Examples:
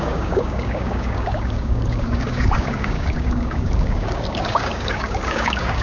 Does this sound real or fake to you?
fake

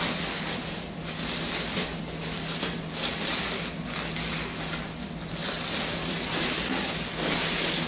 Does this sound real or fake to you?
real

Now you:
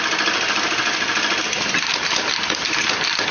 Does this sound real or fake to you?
real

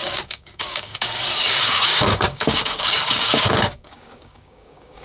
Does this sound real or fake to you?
fake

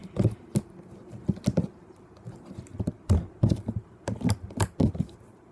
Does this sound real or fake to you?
real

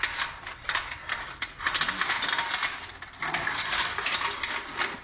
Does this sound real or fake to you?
real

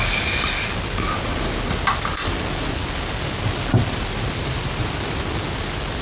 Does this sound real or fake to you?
real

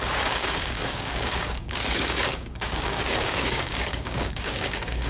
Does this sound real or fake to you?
fake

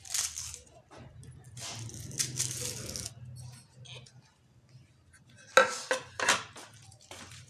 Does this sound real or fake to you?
real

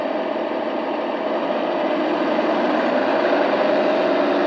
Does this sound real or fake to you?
real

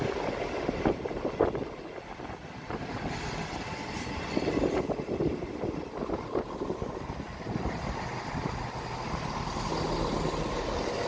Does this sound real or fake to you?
real